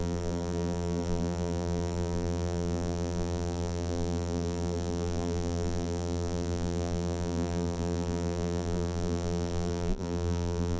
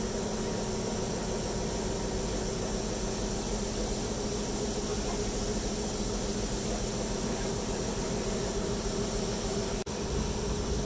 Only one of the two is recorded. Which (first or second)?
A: second